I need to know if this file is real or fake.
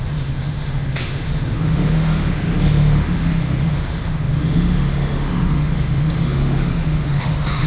fake